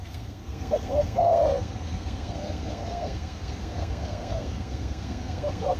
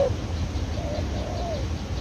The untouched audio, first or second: second